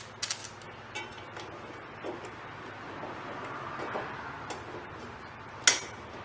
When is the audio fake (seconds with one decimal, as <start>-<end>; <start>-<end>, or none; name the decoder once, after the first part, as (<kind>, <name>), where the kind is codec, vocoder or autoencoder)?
none